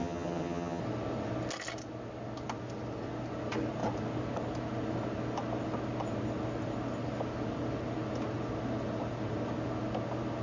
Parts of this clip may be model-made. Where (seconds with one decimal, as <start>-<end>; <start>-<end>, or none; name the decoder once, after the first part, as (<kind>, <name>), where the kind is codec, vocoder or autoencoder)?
0.0-0.8 (vocoder, HiFi-GAN)